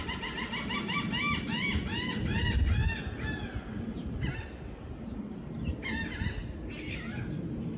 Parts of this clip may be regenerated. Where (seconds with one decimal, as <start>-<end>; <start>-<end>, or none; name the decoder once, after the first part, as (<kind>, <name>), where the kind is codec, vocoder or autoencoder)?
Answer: none